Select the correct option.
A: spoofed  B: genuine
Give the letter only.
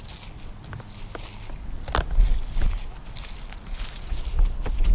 B